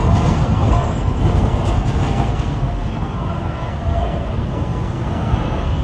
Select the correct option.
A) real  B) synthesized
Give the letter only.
B